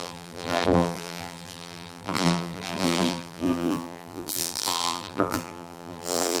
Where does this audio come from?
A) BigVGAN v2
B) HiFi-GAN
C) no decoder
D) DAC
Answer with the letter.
A